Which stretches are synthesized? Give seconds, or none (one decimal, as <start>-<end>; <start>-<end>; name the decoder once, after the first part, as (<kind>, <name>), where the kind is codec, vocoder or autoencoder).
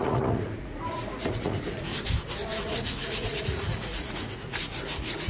0.0-1.9 (vocoder, Vocos); 2.6-5.3